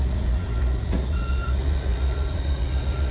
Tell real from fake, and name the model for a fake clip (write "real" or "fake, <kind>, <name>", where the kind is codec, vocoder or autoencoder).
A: fake, vocoder, Vocos